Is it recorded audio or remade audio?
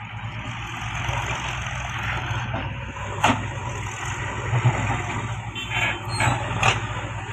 recorded